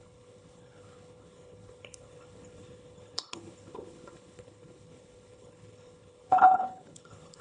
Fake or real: fake